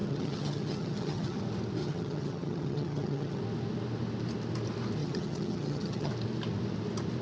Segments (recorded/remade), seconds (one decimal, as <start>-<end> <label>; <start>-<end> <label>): 0.0-1.4 remade; 1.4-1.8 recorded; 1.8-3.4 remade; 3.4-5.0 recorded; 5.0-6.1 remade; 6.1-7.2 recorded